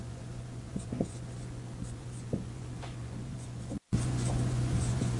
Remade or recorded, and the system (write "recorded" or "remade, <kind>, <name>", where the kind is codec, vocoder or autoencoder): remade, vocoder, Vocos